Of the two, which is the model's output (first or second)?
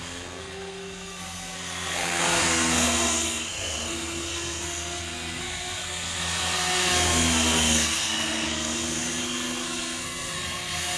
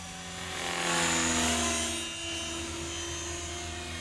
first